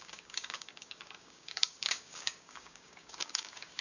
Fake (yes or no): yes